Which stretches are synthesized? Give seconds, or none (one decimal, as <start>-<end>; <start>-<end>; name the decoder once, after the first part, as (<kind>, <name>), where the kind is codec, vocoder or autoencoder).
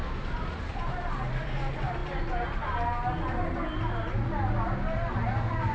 none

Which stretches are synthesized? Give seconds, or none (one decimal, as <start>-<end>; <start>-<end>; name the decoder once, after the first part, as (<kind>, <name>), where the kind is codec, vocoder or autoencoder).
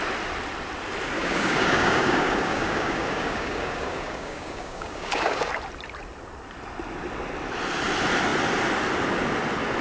1.2-5.5 (codec, DAC)